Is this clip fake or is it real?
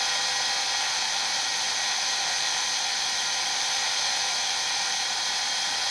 fake